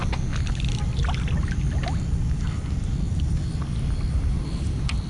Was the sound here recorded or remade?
recorded